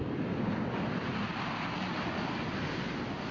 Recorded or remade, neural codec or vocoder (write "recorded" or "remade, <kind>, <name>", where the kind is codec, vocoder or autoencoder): recorded